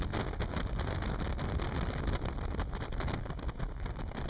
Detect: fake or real real